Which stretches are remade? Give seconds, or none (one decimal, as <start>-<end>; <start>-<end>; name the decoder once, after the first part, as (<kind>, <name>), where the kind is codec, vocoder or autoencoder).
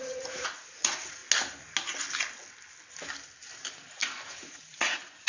0.0-1.2 (vocoder, Vocos); 4.3-5.3